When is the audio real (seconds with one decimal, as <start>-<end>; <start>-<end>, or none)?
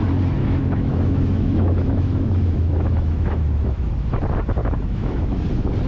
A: 0.0-0.4; 3.9-4.6; 5.4-5.9